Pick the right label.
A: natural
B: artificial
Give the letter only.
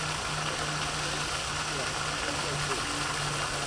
A